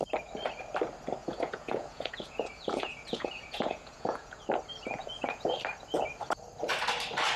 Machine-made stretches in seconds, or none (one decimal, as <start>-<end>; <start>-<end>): 1.2-4.4; 5.0-5.6